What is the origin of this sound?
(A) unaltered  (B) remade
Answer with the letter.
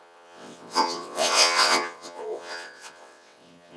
B